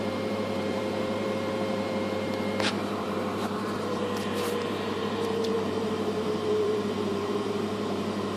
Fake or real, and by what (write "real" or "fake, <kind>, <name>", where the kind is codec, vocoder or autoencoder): fake, vocoder, BigVGAN v2